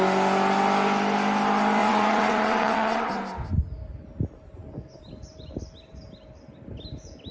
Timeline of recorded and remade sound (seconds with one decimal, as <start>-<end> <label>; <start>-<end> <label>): 0.0-1.8 recorded; 1.8-3.2 remade; 3.2-7.3 recorded

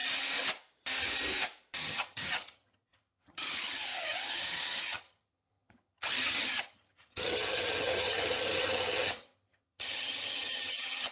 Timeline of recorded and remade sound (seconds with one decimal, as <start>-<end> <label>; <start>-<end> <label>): 0.0-1.8 recorded; 1.8-11.1 remade

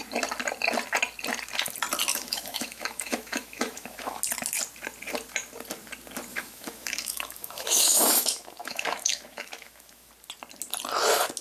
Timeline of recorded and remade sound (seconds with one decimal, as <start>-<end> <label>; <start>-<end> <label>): 0.0-2.1 recorded; 2.1-4.2 remade; 4.2-6.3 recorded; 6.3-10.1 remade; 10.1-11.4 recorded

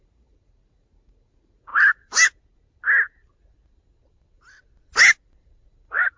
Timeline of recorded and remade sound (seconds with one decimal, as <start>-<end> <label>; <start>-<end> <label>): 0.0-1.7 remade; 1.7-5.4 recorded; 5.4-6.2 remade

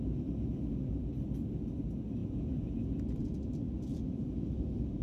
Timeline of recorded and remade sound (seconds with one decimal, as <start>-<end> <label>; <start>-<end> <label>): 0.0-2.2 recorded; 2.2-3.4 remade; 3.4-3.9 recorded; 3.9-4.6 remade; 4.6-5.0 recorded

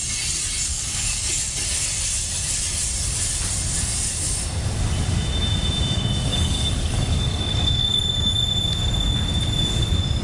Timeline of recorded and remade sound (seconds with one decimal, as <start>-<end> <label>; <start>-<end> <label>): 0.0-0.7 recorded; 0.7-1.3 remade; 1.3-6.3 recorded; 6.3-8.4 remade; 8.4-10.2 recorded

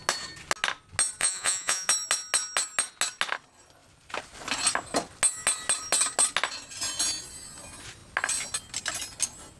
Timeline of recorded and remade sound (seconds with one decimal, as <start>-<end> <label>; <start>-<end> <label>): 0.0-1.2 recorded; 1.2-1.9 remade; 1.9-9.6 recorded